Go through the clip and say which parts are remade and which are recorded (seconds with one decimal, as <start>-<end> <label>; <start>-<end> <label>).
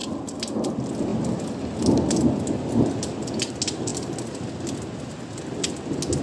0.0-6.2 recorded